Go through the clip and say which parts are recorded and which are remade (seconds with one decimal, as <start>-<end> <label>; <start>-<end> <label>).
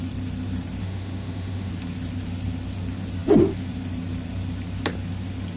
0.0-0.8 recorded; 0.8-1.7 remade; 1.7-5.6 recorded